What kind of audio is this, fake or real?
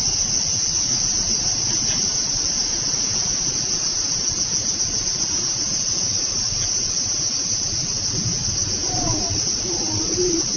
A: real